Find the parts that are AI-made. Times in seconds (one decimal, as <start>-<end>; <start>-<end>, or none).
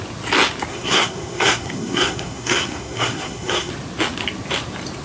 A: 0.7-3.7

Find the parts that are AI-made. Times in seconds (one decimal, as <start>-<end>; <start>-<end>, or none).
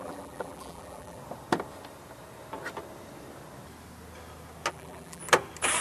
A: 0.0-1.2; 4.7-5.2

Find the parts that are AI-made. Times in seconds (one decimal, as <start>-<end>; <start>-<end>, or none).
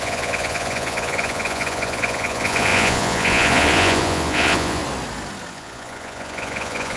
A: 0.0-4.8; 5.5-7.0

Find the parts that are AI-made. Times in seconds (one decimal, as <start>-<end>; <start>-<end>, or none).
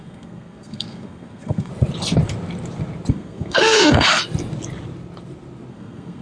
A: 0.0-1.7; 3.1-4.2; 5.7-6.2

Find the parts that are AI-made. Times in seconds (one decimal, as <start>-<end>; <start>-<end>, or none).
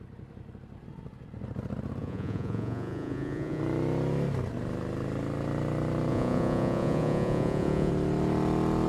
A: 2.0-3.6; 6.1-7.9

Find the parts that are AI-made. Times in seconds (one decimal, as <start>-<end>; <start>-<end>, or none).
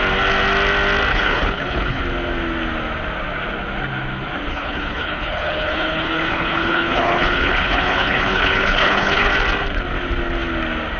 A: 1.1-2.0; 4.5-9.3